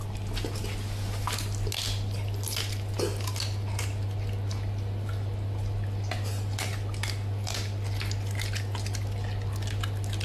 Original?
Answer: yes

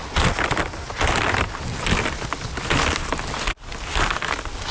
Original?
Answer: yes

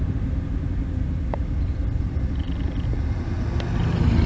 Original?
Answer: yes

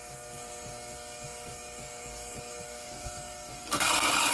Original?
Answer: no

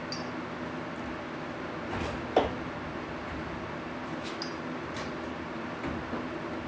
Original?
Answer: yes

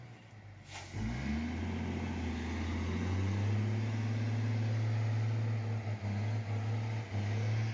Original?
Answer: yes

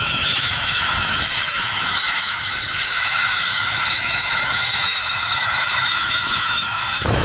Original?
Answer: no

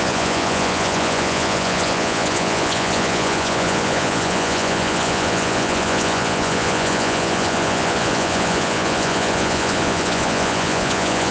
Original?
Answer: no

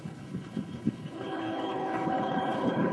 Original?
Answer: no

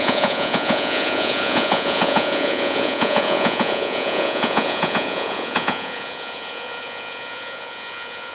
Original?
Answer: no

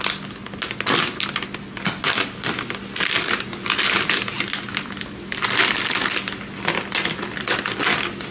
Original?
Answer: yes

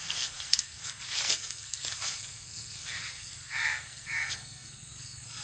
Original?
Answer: no